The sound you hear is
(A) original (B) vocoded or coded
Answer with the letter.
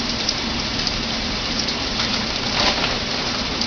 B